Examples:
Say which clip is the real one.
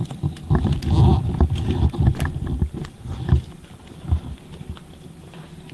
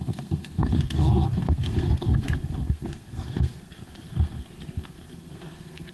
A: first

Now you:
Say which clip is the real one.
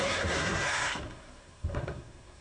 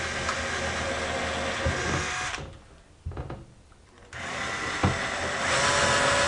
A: second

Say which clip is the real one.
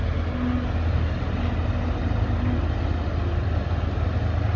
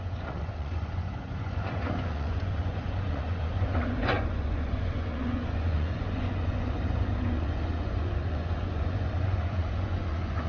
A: first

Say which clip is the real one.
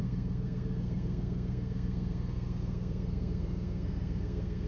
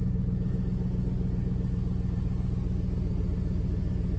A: second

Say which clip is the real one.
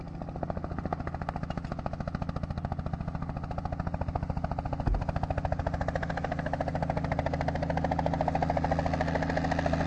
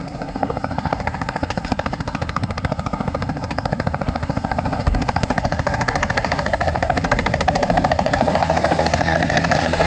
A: first